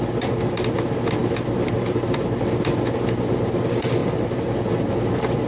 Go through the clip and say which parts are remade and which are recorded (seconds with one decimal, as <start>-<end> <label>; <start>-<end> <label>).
0.0-4.0 remade; 4.0-4.7 recorded; 4.7-5.5 remade